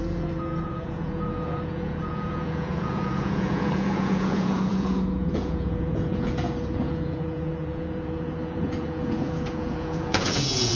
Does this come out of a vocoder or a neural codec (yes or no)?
yes